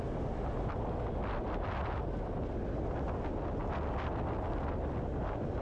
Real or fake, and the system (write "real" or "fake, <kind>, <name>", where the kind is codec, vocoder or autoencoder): real